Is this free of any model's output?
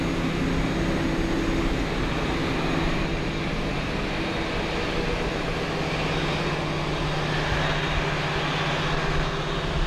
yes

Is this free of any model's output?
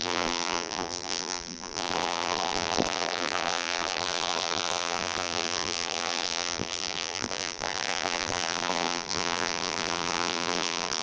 no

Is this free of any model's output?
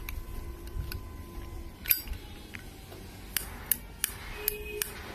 yes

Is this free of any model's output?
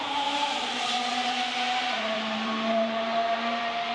no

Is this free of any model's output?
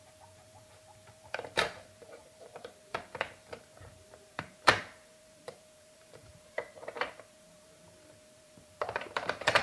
no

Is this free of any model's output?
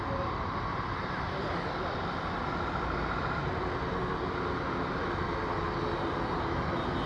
yes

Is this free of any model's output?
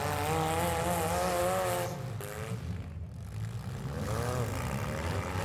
yes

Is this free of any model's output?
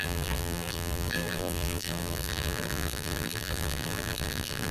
no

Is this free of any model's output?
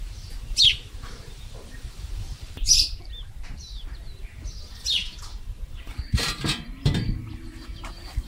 no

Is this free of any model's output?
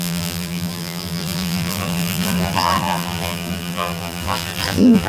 no